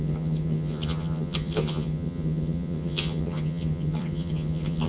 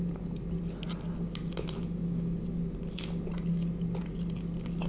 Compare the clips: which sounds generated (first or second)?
first